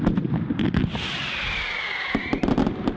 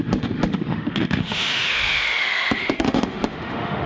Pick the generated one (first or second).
second